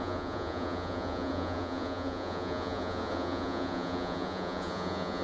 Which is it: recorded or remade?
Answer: remade